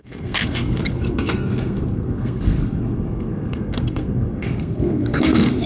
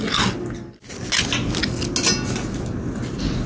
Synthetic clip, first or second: first